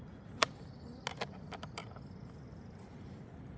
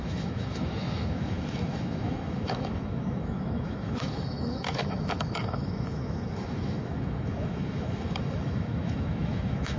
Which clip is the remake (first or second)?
second